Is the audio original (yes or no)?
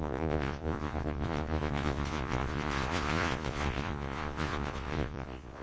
no